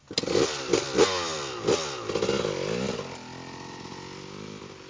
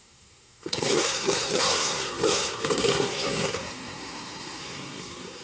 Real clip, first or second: first